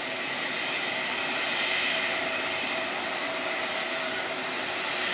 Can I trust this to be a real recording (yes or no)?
no